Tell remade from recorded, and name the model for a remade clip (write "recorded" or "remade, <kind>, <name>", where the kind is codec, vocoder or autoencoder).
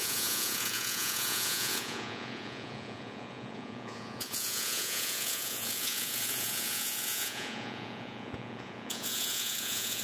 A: remade, vocoder, Vocos